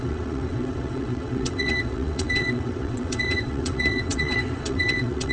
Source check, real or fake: fake